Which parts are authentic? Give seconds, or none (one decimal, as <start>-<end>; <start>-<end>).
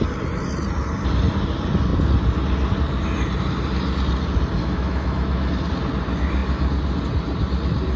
0.0-4.6; 5.5-8.0